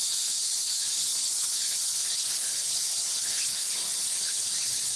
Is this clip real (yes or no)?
no